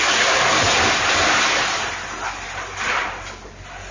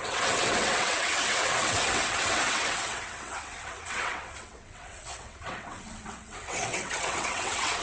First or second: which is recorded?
first